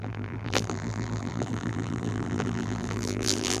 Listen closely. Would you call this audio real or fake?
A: fake